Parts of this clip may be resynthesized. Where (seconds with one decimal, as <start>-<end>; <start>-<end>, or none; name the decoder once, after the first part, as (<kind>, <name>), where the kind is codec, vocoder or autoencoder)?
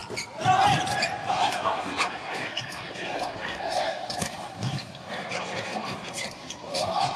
1.3-7.2 (codec, SNAC)